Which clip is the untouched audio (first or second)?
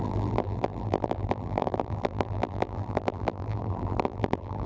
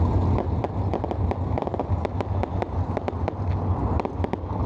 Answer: second